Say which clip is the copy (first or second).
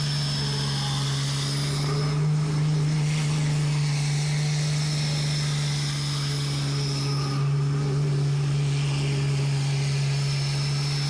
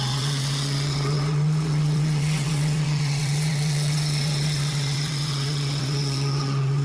second